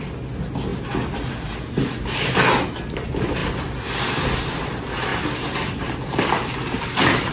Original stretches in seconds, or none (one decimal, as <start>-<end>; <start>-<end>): 0.0-7.3